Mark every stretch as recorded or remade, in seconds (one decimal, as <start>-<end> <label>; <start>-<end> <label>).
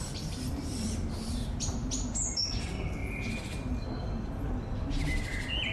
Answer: 0.0-1.8 remade; 1.8-2.5 recorded; 2.5-3.0 remade; 3.0-5.1 recorded; 5.1-5.7 remade